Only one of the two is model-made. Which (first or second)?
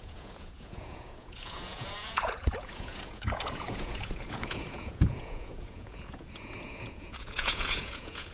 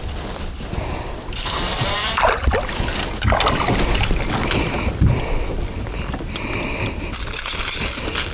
first